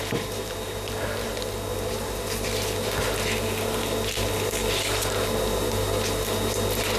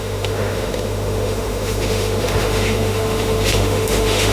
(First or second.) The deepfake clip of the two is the second